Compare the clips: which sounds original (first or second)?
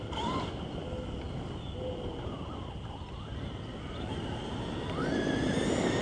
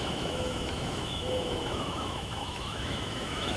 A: first